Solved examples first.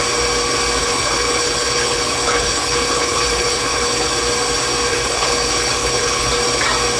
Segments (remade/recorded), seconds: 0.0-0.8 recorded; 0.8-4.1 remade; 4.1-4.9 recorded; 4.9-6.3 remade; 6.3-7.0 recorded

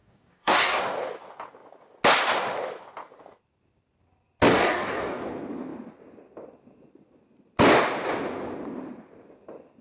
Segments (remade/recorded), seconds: 0.0-0.8 remade; 0.8-4.5 recorded; 4.5-5.2 remade; 5.2-9.8 recorded

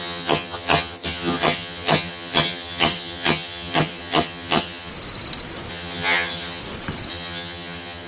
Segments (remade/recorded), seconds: 0.0-4.9 remade; 4.9-5.7 recorded; 5.7-6.6 remade; 6.6-7.1 recorded; 7.1-8.1 remade

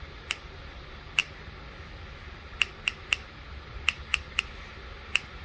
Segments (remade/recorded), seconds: 0.0-5.4 recorded

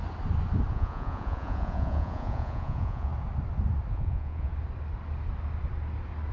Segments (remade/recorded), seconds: 0.0-0.7 recorded; 0.7-3.1 remade; 3.1-3.9 recorded; 3.9-4.5 remade; 4.5-6.3 recorded